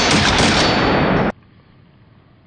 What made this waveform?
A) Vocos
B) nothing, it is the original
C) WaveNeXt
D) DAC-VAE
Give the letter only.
B